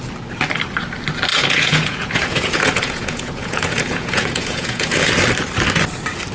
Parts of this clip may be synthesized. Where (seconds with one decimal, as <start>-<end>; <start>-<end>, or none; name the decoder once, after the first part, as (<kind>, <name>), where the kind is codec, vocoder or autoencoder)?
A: 1.3-5.1 (vocoder, Vocos)